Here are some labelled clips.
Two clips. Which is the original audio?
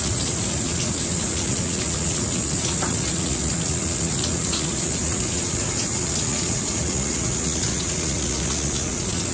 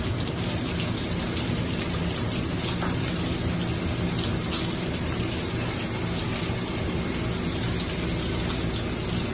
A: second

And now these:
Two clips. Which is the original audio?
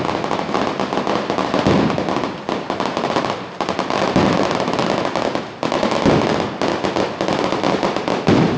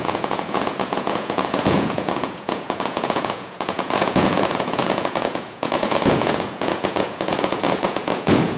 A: first